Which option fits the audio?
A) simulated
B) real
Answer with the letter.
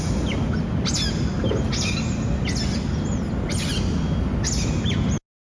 B